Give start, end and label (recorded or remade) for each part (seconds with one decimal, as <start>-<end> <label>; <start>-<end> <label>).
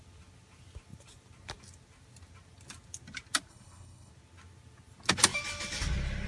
0.0-3.5 recorded; 3.5-4.1 remade; 4.1-6.3 recorded